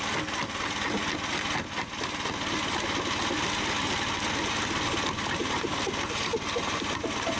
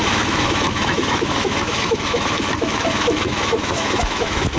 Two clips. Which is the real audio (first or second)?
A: first